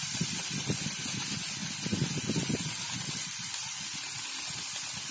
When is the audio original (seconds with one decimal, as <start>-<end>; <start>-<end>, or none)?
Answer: 1.6-3.2